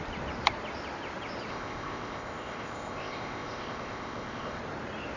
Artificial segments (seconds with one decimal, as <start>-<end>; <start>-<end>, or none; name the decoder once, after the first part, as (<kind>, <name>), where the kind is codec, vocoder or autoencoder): 1.5-4.6 (codec, ZipCodec)